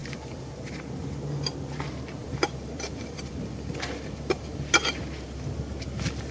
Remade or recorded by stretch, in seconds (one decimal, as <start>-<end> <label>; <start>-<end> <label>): 0.0-0.5 remade; 0.5-2.2 recorded; 2.2-5.0 remade; 5.0-6.3 recorded